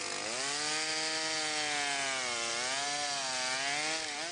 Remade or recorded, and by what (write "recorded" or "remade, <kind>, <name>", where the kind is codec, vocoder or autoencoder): recorded